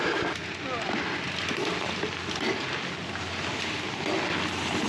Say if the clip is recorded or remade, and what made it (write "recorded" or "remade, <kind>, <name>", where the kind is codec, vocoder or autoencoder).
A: recorded